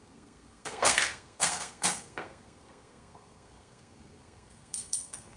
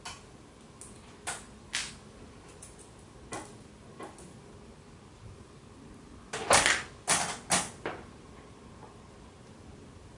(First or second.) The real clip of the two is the second